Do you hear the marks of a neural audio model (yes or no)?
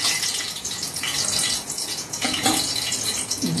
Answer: yes